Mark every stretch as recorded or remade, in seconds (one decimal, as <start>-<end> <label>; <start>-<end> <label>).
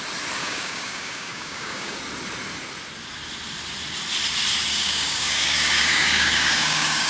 0.0-0.4 recorded; 0.4-2.0 remade; 2.0-4.7 recorded; 4.7-7.1 remade